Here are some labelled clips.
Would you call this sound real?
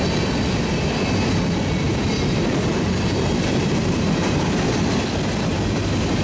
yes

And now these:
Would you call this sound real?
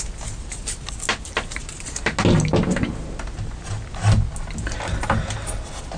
yes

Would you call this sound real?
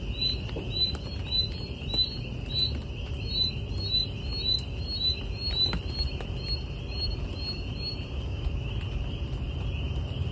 yes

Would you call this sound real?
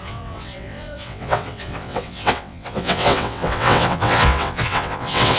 no